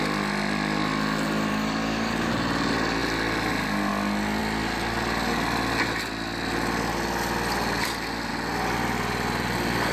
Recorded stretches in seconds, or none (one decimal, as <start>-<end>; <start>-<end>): 0.0-1.5; 2.3-9.9